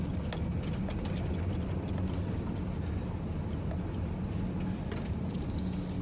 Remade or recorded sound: recorded